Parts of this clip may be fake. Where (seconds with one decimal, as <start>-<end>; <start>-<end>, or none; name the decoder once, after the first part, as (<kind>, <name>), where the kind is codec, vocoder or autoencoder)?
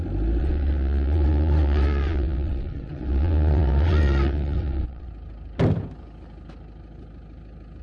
0.4-5.1 (vocoder, WaveNeXt)